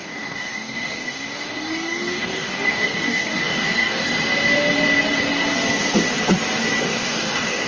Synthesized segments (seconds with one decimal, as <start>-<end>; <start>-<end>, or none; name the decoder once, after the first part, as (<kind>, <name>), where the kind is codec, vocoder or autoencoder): 0.0-4.1 (codec, DAC); 6.8-7.7